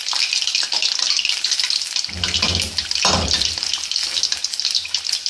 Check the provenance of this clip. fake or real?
real